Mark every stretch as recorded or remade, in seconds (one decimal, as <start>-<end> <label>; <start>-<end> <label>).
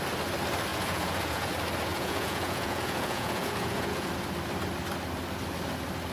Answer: 0.0-0.7 recorded; 0.7-1.5 remade; 1.5-1.9 recorded; 1.9-4.1 remade; 4.1-6.1 recorded